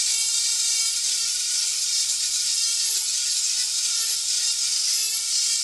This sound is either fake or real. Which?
real